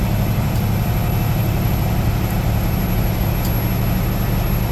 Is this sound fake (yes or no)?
no